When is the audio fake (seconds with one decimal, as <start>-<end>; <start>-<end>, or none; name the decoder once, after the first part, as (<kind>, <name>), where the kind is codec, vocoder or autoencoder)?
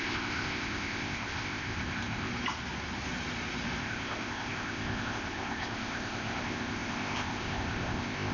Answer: 0.0-2.3 (codec, ZipCodec); 3.8-8.3